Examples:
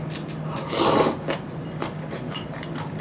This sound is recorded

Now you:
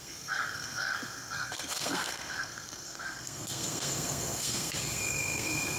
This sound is remade